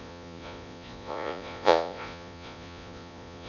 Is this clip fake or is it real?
fake